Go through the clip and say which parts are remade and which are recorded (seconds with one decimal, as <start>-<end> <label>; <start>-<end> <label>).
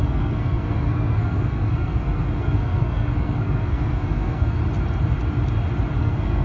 0.0-4.6 remade; 4.6-6.0 recorded; 6.0-6.4 remade